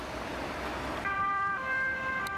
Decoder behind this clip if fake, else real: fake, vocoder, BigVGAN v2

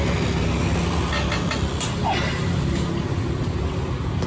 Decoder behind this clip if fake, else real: real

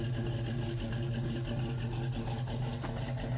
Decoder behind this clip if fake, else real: real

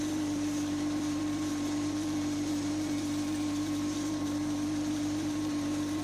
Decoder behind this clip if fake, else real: fake, vocoder, BigVGAN v2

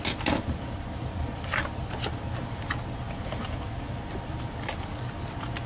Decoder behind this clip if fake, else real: real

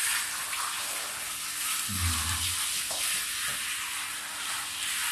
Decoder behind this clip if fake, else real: real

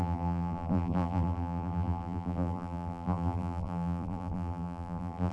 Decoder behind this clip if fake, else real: fake, vocoder, BigVGAN v2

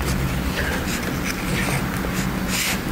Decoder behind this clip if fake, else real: real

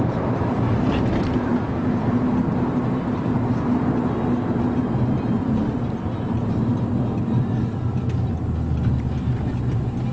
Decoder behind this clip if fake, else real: real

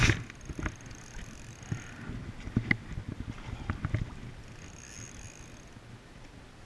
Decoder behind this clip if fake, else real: real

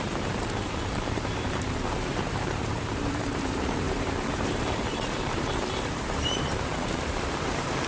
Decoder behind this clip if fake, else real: fake, vocoder, BigVGAN v2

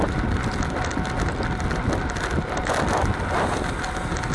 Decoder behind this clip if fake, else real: real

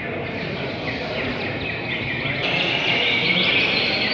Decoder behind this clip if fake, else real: fake, vocoder, BigVGAN v2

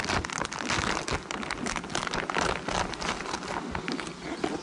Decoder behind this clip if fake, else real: real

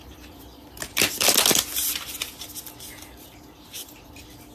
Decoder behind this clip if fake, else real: real